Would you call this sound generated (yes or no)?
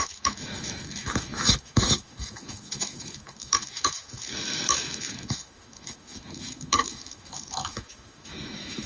yes